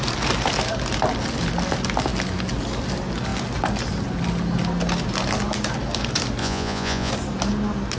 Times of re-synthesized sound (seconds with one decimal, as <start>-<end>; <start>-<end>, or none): 6.4-7.1